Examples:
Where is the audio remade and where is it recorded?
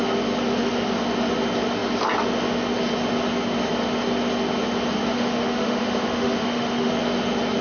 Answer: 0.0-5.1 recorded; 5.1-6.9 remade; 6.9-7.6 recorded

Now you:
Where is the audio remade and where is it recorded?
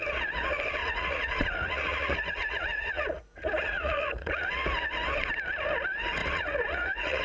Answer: 0.0-0.8 recorded; 0.8-4.5 remade; 4.5-6.2 recorded; 6.2-7.2 remade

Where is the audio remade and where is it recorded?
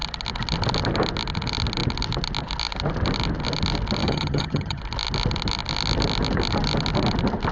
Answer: 0.0-4.0 recorded; 4.0-4.8 remade; 4.8-7.5 recorded